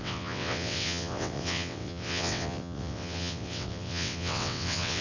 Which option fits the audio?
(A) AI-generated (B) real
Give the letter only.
A